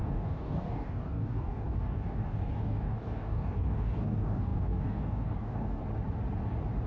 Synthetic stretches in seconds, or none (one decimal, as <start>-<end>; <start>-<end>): 0.0-5.8